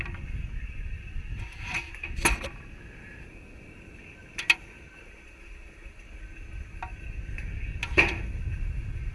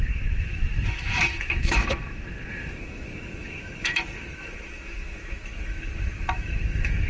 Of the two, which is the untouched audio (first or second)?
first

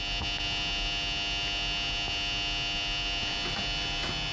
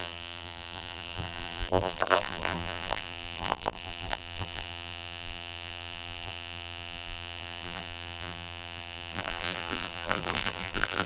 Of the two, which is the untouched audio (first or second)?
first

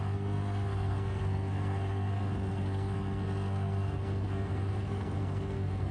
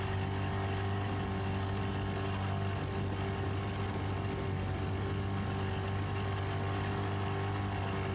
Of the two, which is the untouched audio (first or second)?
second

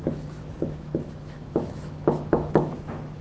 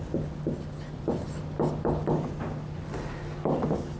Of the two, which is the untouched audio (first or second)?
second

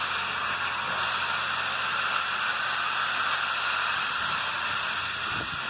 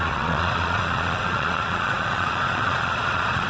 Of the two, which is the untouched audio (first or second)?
first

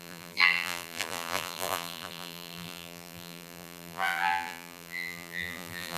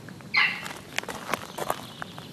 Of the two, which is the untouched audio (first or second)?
second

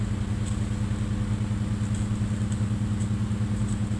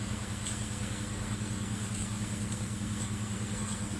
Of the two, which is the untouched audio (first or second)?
first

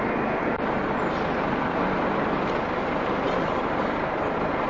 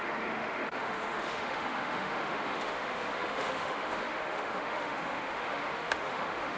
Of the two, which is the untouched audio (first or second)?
first